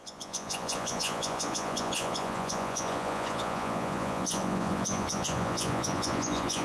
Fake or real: fake